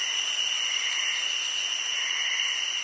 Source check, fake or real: real